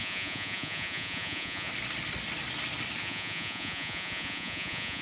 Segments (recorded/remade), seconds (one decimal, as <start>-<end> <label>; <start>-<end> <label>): 0.0-1.7 remade; 1.7-3.0 recorded; 3.0-5.0 remade